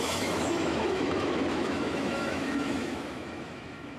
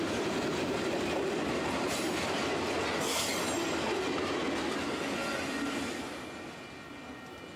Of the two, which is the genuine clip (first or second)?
second